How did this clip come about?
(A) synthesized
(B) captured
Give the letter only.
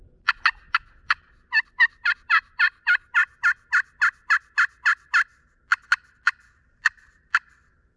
B